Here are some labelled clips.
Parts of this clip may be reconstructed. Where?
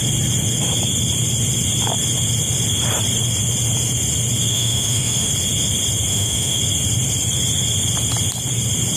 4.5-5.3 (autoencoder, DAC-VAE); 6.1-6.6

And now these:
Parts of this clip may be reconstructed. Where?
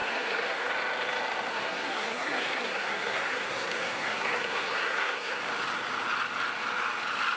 0.0-0.7 (codec, SNAC); 1.5-5.4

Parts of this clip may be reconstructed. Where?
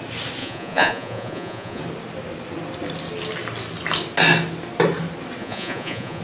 0.4-1.8 (vocoder, Vocos); 5.4-6.2